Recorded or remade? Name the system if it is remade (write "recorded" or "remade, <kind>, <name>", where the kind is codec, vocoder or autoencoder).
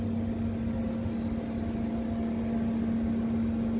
recorded